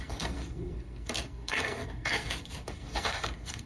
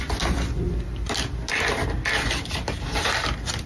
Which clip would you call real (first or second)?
second